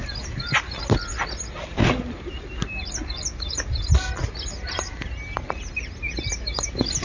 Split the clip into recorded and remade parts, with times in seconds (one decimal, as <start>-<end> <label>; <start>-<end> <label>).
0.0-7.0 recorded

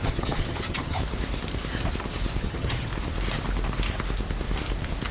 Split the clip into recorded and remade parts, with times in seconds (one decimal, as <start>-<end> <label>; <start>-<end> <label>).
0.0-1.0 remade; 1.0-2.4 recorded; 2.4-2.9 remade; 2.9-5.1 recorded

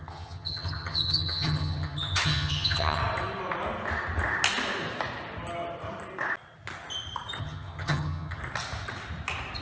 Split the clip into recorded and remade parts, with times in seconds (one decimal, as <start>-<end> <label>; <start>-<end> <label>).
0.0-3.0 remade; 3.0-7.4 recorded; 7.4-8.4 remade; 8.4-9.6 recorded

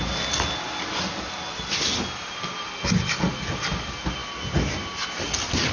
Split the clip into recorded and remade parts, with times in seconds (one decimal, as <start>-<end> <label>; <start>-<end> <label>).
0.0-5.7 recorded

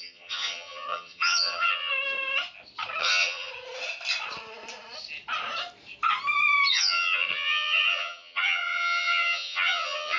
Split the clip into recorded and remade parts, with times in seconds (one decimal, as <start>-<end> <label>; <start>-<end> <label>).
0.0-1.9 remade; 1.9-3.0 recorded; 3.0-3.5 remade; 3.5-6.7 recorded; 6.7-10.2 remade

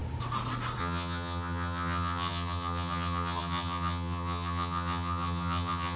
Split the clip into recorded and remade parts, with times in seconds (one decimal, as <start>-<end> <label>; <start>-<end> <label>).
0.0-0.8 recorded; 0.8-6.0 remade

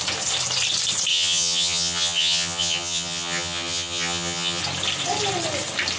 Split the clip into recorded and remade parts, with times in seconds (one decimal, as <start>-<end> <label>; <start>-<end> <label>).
0.0-1.1 recorded; 1.1-4.6 remade; 4.6-6.0 recorded